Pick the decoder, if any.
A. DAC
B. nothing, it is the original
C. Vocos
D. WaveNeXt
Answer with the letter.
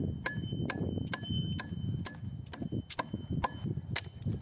B